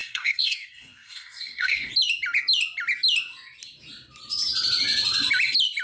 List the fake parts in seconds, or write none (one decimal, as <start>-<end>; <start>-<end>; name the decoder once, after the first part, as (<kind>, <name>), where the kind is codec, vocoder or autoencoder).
0.0-1.9 (codec, SNAC)